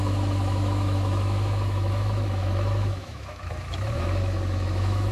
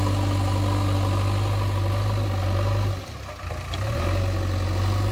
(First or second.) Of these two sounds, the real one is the second